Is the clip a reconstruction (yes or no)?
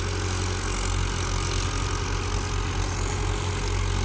no